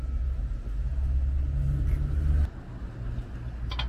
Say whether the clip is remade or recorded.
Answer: recorded